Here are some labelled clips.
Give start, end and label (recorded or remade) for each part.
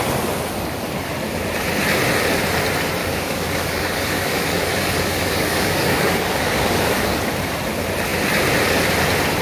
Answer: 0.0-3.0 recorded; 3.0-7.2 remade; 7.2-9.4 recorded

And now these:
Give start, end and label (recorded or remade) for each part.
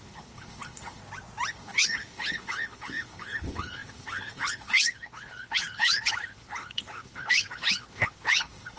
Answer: 0.0-1.0 remade; 1.0-1.5 recorded; 1.5-8.8 remade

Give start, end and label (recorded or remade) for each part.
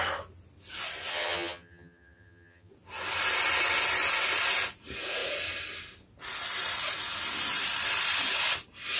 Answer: 0.0-1.1 recorded; 1.1-2.7 remade; 2.7-9.0 recorded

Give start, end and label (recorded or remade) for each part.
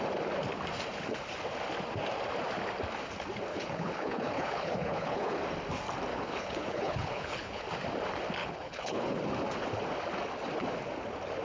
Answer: 0.0-3.5 recorded; 3.5-5.4 remade; 5.4-6.1 recorded; 6.1-7.7 remade; 7.7-8.4 recorded; 8.4-9.2 remade; 9.2-11.4 recorded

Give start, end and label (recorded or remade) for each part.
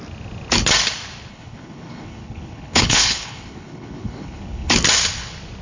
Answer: 0.0-1.3 recorded; 1.3-4.7 remade; 4.7-5.6 recorded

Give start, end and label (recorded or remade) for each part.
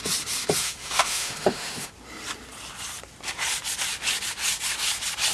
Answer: 0.0-0.6 recorded; 0.6-1.9 remade; 1.9-5.3 recorded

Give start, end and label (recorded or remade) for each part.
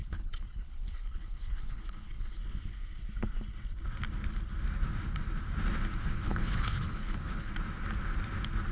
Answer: 0.0-2.4 remade; 2.4-6.0 recorded; 6.0-7.5 remade; 7.5-8.7 recorded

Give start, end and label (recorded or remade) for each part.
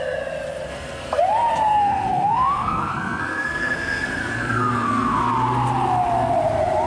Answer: 0.0-0.7 recorded; 0.7-1.2 remade; 1.2-1.7 recorded; 1.7-5.2 remade; 5.2-6.9 recorded